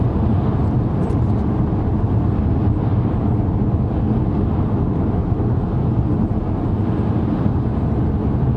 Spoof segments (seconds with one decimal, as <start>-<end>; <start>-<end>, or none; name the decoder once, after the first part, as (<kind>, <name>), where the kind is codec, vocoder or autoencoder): none